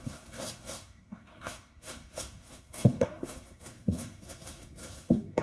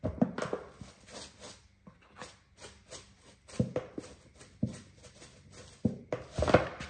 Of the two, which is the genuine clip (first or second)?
second